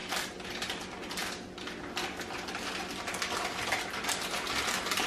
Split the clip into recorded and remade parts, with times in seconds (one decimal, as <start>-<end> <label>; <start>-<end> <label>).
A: 0.0-0.5 remade; 0.5-5.1 recorded